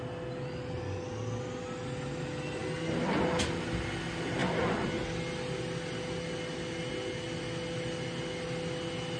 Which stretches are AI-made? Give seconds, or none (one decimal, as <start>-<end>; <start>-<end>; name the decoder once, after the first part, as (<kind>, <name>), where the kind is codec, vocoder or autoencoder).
none